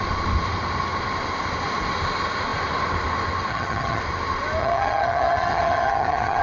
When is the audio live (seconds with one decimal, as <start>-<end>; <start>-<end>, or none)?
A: 0.0-3.5; 4.0-4.6